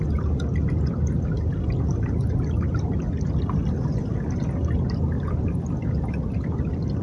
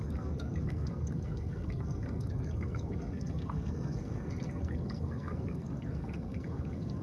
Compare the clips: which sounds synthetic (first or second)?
second